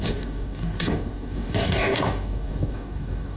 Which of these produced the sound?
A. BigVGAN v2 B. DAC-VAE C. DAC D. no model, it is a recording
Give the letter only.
C